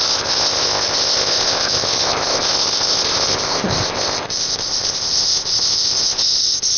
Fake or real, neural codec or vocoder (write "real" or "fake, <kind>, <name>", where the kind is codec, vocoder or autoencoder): fake, codec, ZipCodec